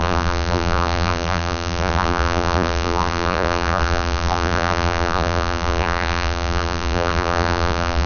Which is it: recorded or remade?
remade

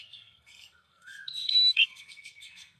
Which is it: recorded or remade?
remade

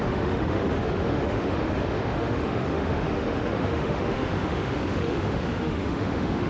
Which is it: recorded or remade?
remade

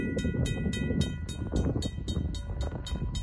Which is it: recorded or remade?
recorded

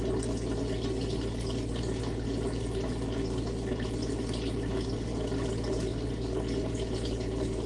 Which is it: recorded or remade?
recorded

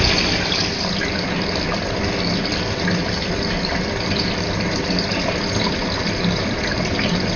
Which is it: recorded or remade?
recorded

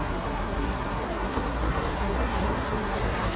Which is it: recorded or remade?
remade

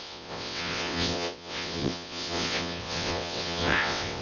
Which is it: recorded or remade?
remade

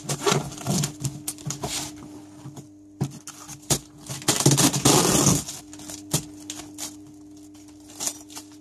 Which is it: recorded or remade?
recorded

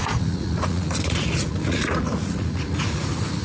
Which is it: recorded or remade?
remade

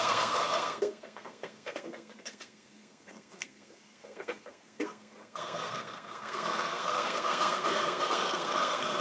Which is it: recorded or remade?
remade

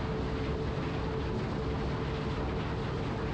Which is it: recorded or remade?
recorded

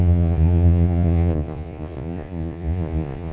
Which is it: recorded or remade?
remade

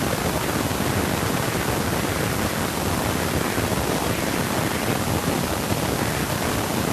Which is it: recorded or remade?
recorded